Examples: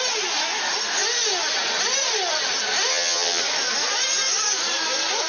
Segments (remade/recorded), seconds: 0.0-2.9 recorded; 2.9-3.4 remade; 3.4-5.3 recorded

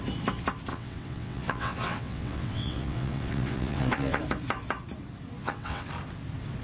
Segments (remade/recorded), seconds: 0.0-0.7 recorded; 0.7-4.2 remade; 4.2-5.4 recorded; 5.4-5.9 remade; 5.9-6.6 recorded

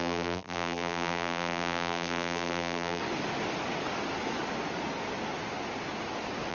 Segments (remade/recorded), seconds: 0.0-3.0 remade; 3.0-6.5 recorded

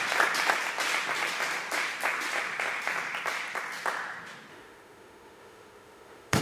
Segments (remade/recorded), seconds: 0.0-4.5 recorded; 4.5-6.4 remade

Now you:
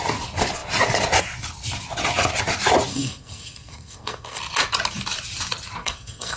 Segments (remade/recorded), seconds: 0.0-2.9 recorded; 2.9-4.4 remade; 4.4-5.8 recorded; 5.8-6.4 remade

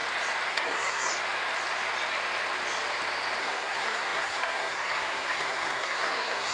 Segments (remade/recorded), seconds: 0.0-0.5 recorded; 0.5-1.1 remade; 1.1-3.4 recorded; 3.4-6.5 remade

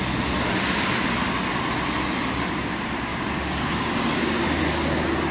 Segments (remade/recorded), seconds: 0.0-3.1 recorded; 3.1-4.6 remade; 4.6-5.3 recorded

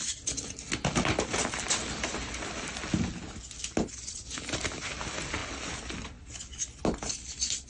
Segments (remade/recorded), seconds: 0.0-7.7 recorded